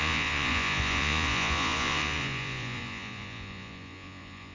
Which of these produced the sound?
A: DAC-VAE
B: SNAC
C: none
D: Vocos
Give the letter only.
D